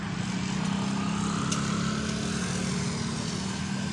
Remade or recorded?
recorded